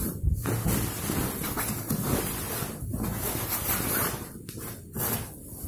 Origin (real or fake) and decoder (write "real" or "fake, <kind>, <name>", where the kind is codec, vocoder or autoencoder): real